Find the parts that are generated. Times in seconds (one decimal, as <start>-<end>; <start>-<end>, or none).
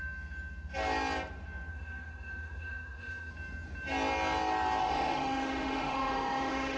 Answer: 1.7-3.3; 4.8-6.8